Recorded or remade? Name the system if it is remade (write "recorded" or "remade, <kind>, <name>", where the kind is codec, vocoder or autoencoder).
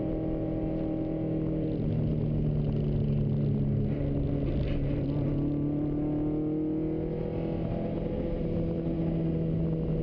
recorded